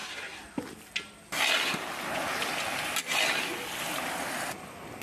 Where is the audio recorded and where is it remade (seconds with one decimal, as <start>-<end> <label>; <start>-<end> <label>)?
0.0-5.0 recorded